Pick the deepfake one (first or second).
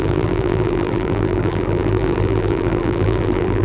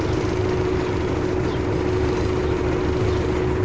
first